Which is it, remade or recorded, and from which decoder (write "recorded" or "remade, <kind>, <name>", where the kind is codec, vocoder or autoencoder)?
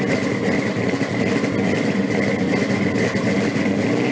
recorded